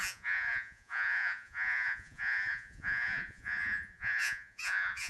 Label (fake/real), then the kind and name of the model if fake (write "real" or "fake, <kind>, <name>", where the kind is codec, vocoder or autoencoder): fake, vocoder, Vocos